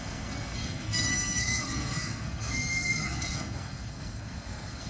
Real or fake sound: fake